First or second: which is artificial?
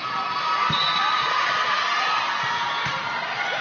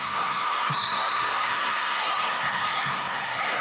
second